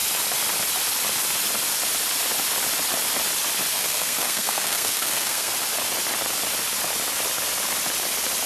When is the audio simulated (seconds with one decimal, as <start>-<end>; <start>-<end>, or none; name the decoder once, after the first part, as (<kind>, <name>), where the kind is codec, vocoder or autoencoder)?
3.7-5.5 (codec, SNAC)